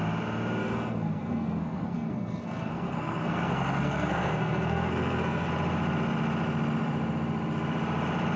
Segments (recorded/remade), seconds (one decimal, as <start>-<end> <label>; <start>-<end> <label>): 0.0-0.6 recorded; 0.6-5.5 remade; 5.5-8.4 recorded